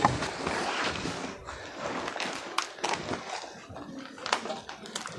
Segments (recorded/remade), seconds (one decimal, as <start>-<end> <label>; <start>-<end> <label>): 0.0-5.2 recorded